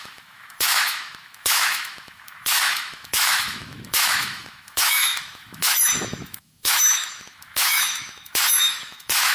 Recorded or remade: remade